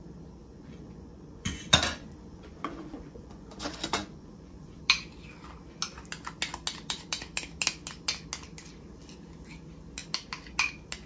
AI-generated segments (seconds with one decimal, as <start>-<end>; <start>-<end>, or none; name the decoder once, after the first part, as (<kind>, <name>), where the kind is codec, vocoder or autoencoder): 0.4-4.8 (vocoder, Vocos)